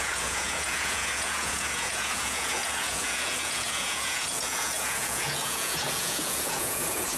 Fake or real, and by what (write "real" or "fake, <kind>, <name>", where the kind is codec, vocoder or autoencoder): fake, vocoder, Vocos